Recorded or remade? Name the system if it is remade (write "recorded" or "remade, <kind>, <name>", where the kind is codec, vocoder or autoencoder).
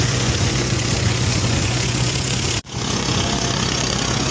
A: remade, vocoder, Vocos